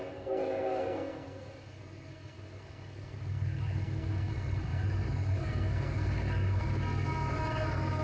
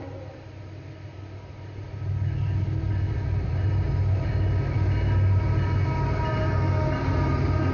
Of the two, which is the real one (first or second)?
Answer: second